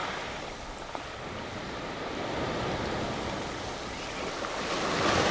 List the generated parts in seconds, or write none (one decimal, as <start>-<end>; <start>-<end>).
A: 0.0-3.2